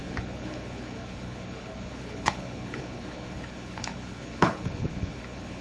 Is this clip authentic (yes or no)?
no